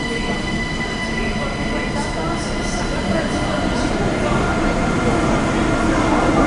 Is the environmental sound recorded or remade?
recorded